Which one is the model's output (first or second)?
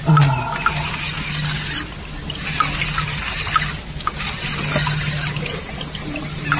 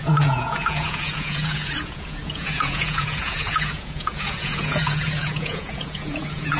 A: second